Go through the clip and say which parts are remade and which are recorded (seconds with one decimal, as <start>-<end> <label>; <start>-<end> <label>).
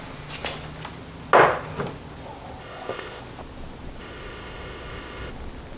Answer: 0.0-2.6 recorded; 2.6-3.2 remade; 3.2-4.0 recorded; 4.0-5.3 remade; 5.3-5.8 recorded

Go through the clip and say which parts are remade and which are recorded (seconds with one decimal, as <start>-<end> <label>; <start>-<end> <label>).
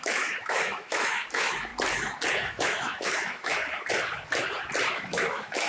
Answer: 0.0-1.7 remade; 1.7-2.3 recorded; 2.3-3.6 remade; 3.6-4.9 recorded; 4.9-5.7 remade